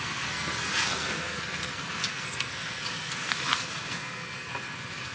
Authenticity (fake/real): fake